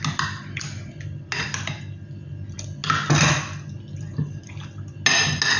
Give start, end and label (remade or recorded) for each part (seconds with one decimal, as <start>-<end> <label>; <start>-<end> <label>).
0.0-5.6 recorded